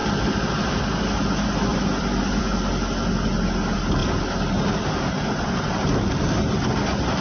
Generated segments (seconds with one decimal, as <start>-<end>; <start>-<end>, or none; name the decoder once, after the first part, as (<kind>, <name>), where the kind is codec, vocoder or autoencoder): 0.0-0.8 (vocoder, BigVGAN v2); 1.7-2.4